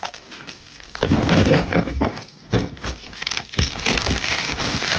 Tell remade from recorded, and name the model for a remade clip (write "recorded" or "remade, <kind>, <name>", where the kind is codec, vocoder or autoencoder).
remade, codec, DAC